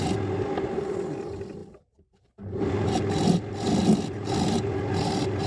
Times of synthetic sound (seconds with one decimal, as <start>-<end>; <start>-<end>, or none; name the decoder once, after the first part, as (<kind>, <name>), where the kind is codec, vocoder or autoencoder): 1.6-4.9 (vocoder, BigVGAN v2)